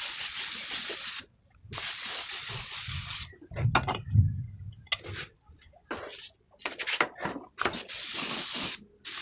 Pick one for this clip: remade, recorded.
recorded